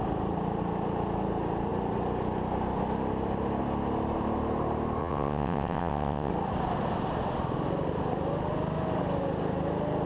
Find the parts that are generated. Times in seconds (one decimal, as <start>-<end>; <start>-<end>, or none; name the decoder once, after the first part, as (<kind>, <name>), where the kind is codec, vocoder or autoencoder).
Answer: 5.0-6.3 (vocoder, WaveNeXt)